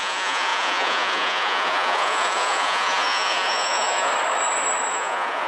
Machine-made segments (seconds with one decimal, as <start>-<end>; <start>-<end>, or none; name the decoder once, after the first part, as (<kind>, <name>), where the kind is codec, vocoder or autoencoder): 0.0-4.1 (vocoder, Vocos); 4.9-5.5